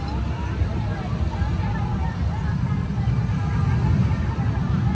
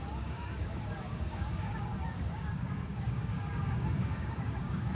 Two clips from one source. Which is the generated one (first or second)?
second